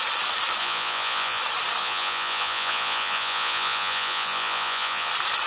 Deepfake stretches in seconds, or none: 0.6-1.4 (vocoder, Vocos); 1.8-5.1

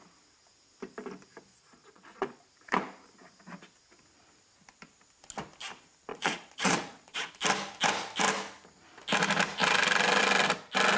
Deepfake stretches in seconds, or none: 1.5-2.4 (vocoder, Vocos); 6.1-7.3

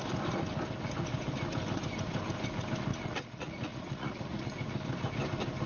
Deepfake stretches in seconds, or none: 2.9-4.4 (vocoder, Vocos)

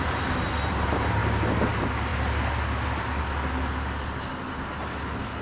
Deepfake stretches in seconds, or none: none

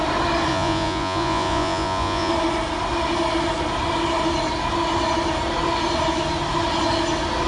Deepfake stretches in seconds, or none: 0.5-2.3 (vocoder, Vocos)

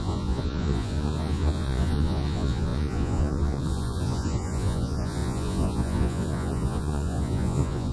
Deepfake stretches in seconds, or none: 0.0-7.9 (vocoder, Vocos)

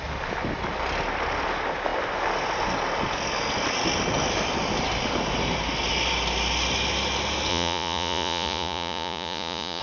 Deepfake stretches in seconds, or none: 7.5-9.8 (vocoder, Vocos)

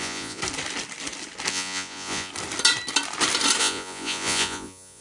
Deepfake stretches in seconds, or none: 0.0-0.4 (vocoder, Vocos); 1.5-2.3; 3.6-5.0